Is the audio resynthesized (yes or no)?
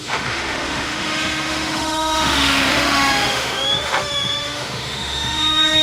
yes